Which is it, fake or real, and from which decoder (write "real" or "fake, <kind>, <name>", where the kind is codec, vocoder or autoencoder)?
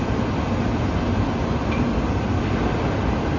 real